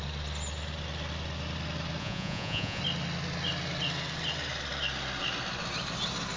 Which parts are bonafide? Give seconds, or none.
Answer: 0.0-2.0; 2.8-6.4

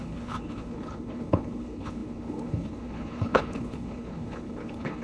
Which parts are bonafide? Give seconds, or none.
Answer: none

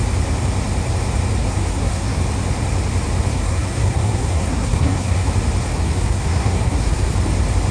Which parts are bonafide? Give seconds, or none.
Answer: 0.0-1.4; 2.2-3.3; 5.3-5.7; 7.1-7.7

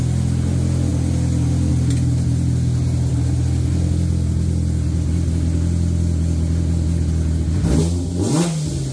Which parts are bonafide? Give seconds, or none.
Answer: 0.0-8.9

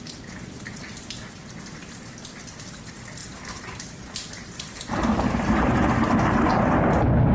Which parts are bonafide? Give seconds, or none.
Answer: 0.0-3.2; 6.6-7.3

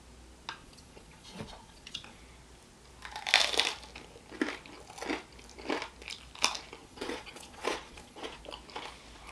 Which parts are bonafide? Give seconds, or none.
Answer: 0.0-0.6; 2.2-6.8; 8.4-9.3

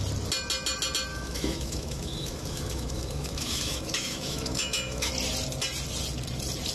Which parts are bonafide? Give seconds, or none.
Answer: 0.0-1.1; 5.1-6.7

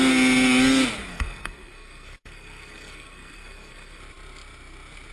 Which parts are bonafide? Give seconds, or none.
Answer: 0.0-1.1; 4.0-5.1